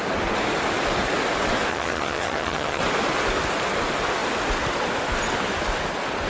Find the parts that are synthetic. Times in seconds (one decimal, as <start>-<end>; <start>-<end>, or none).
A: 1.7-2.8